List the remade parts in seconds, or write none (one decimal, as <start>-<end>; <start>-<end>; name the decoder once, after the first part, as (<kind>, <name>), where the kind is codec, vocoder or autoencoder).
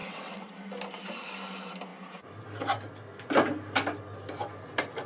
0.0-0.5 (vocoder, WaveNeXt)